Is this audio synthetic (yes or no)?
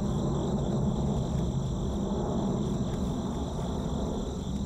no